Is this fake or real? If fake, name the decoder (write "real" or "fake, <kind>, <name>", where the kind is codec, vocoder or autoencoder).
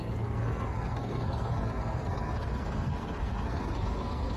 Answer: fake, codec, SNAC